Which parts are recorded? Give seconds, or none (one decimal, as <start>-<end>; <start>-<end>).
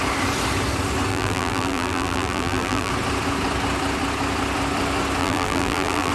0.0-1.1; 2.9-5.2